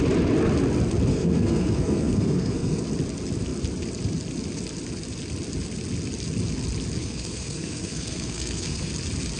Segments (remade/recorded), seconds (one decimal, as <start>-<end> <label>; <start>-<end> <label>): 0.0-1.1 recorded; 1.1-2.8 remade; 2.8-7.0 recorded; 7.0-8.9 remade; 8.9-9.4 recorded